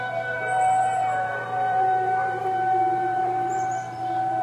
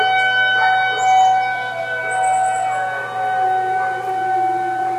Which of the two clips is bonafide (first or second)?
second